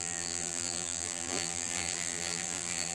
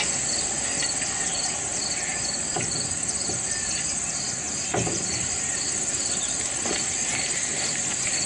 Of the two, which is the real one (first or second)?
second